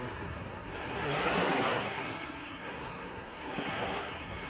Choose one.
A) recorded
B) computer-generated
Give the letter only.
B